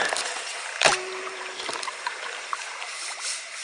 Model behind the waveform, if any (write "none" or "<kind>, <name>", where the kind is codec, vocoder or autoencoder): vocoder, BigVGAN v2